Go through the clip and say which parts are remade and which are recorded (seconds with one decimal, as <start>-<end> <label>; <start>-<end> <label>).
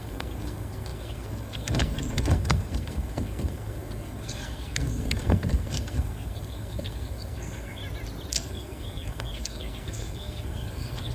0.0-7.8 remade; 7.8-8.3 recorded; 8.3-11.1 remade